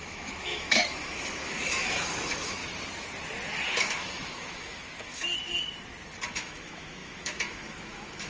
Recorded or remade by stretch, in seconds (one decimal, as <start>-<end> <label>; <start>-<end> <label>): 0.0-2.6 remade; 2.6-3.8 recorded; 3.8-5.2 remade; 5.2-6.3 recorded; 6.3-8.3 remade